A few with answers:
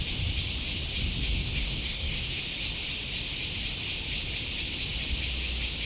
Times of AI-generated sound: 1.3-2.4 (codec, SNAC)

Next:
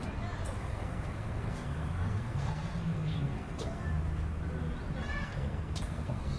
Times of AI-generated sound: 0.6-3.9 (codec, SNAC); 5.1-6.4

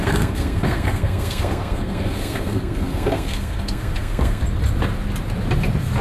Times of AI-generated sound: 0.0-4.4 (codec, SNAC)

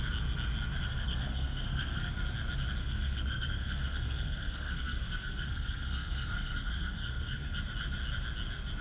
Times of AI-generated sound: 0.8-2.1 (codec, SNAC); 2.8-7.6